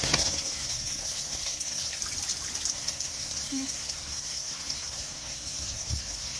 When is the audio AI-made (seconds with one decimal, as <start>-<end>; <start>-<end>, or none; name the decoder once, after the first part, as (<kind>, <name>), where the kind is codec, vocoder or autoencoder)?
0.0-2.0 (codec, SNAC); 2.7-6.4